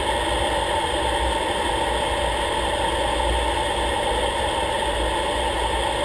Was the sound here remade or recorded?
recorded